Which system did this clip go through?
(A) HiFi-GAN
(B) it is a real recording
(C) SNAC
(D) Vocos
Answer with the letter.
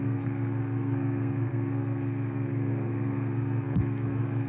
C